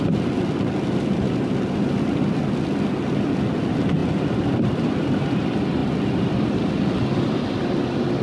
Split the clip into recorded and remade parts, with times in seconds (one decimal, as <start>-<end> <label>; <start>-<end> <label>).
0.0-4.0 recorded; 4.0-5.2 remade; 5.2-5.8 recorded; 5.8-7.7 remade; 7.7-8.2 recorded